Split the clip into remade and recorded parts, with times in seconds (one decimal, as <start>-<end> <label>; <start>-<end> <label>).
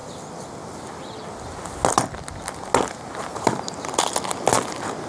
0.0-5.1 recorded